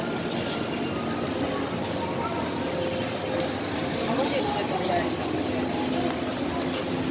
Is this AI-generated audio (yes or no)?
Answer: no